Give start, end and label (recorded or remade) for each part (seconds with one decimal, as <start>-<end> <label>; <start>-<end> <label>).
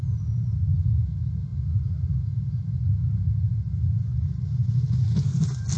0.0-5.8 recorded